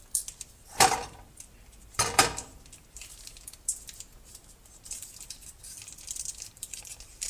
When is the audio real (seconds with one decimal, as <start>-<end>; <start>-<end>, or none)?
3.7-4.4